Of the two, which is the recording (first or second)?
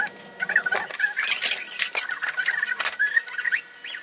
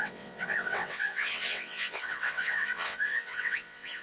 first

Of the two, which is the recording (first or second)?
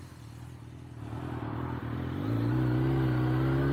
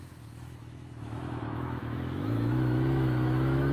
first